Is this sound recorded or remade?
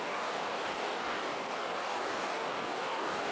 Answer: remade